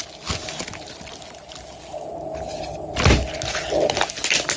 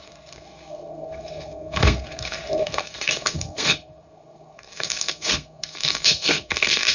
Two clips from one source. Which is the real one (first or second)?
first